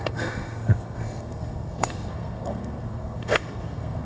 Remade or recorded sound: remade